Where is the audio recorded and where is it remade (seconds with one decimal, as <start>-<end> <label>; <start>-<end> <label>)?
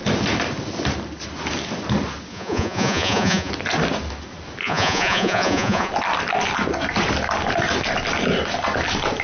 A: 0.0-2.3 recorded; 2.3-3.5 remade; 3.5-4.6 recorded; 4.6-5.9 remade; 5.9-9.2 recorded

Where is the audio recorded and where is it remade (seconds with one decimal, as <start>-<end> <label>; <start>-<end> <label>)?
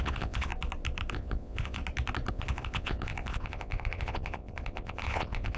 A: 0.0-0.5 remade; 0.5-1.1 recorded; 1.1-1.8 remade; 1.8-2.3 recorded; 2.3-5.6 remade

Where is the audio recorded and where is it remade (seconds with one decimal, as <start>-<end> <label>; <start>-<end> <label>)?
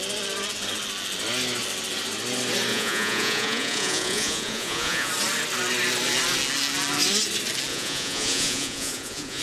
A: 0.0-2.7 recorded; 2.7-5.1 remade; 5.1-7.7 recorded; 7.7-9.4 remade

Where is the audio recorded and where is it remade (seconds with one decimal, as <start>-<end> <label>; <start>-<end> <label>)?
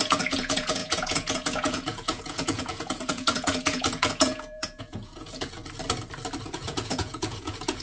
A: 0.0-5.6 remade; 5.6-6.4 recorded; 6.4-7.8 remade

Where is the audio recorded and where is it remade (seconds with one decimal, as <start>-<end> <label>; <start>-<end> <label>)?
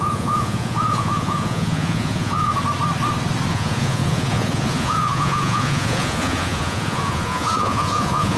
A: 0.0-2.5 remade; 2.5-3.5 recorded; 3.5-8.4 remade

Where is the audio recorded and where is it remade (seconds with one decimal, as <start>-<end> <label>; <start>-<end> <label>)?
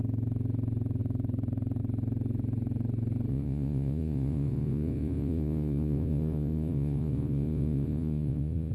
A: 0.0-3.3 recorded; 3.3-8.7 remade